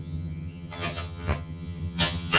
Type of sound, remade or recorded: remade